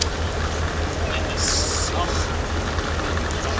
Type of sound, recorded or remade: recorded